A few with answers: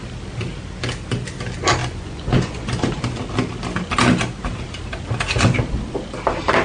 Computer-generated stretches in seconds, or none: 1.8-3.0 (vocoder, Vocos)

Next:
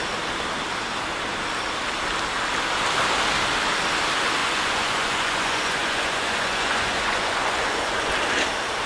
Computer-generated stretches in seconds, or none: 4.4-8.1 (vocoder, Vocos)

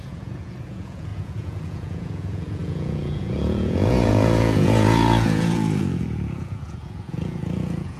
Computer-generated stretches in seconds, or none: 0.0-8.0 (vocoder, Vocos)

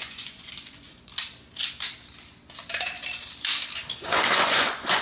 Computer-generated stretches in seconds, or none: 0.0-1.1 (vocoder, Vocos); 4.0-5.0

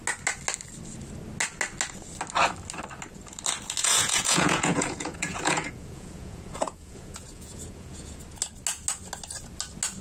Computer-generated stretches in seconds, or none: 3.8-8.2 (vocoder, Vocos)